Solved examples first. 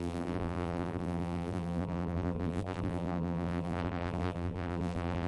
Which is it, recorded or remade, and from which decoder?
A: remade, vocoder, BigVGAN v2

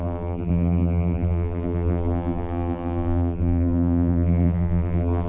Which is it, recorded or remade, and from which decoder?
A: remade, vocoder, BigVGAN v2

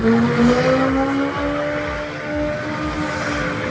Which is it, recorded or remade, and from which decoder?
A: recorded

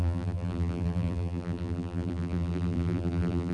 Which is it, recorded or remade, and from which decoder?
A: remade, vocoder, BigVGAN v2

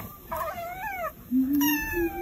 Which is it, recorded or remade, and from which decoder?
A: remade, vocoder, BigVGAN v2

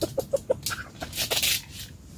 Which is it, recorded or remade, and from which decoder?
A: recorded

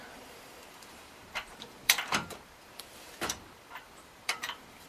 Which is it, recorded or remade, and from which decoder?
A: remade, vocoder, BigVGAN v2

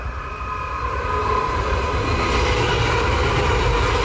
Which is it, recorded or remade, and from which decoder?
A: recorded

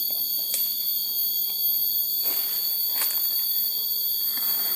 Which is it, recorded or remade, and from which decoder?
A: recorded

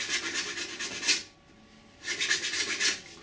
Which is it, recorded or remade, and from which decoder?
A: recorded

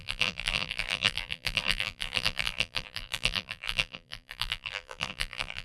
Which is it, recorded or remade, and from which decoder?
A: remade, vocoder, BigVGAN v2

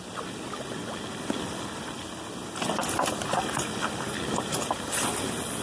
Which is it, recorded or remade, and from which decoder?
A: recorded